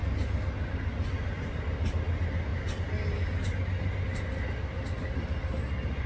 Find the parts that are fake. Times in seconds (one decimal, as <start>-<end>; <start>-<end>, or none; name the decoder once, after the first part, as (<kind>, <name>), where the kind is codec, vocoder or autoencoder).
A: none